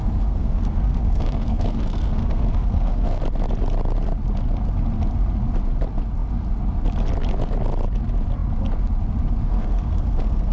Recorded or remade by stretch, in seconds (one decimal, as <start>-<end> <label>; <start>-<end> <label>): 0.0-3.2 remade; 3.2-9.5 recorded; 9.5-10.5 remade